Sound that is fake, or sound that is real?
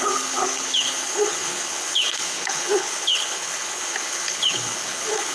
fake